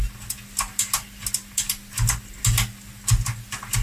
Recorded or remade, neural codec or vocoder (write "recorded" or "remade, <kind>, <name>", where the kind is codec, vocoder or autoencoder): recorded